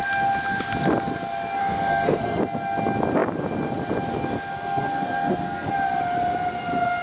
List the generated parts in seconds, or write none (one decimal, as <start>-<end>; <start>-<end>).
1.6-2.4; 4.5-5.7